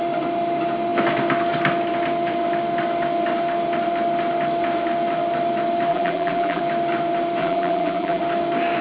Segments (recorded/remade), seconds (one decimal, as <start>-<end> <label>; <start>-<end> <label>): 0.0-5.9 recorded; 5.9-6.6 remade; 6.6-7.4 recorded; 7.4-8.2 remade; 8.2-8.8 recorded